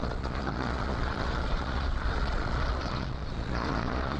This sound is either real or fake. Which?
fake